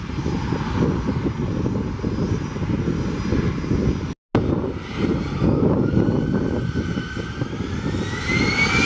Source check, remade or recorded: recorded